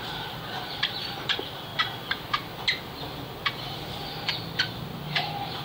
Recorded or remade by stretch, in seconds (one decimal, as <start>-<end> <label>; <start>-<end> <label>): 0.0-1.7 remade; 1.7-4.6 recorded; 4.6-5.6 remade